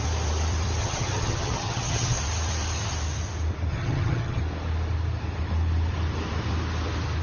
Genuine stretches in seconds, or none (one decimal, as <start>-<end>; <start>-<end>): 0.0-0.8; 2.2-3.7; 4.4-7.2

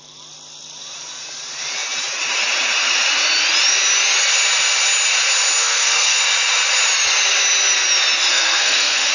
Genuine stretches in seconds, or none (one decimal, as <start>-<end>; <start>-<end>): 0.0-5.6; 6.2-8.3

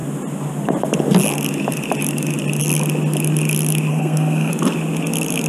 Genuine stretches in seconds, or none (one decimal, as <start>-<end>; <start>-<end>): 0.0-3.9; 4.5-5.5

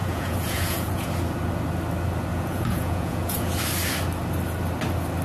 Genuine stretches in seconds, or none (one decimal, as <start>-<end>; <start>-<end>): 1.1-2.3; 3.5-5.2

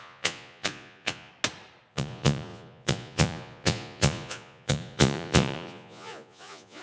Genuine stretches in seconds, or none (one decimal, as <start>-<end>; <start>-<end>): 1.3-1.9

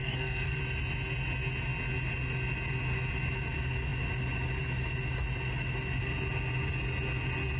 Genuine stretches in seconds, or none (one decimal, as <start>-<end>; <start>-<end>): 0.6-7.6